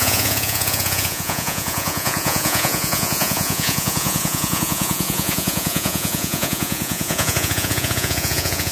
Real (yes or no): no